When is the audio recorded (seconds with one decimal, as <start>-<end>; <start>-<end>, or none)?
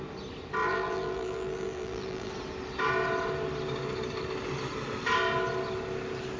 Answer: 0.0-0.6; 2.3-6.4